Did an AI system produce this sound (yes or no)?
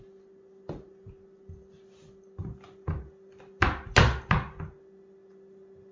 no